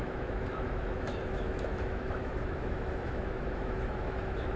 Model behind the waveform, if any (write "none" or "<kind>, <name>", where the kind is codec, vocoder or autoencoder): autoencoder, DAC-VAE